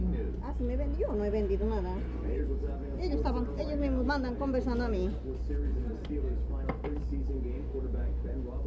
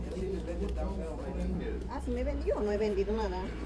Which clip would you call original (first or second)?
first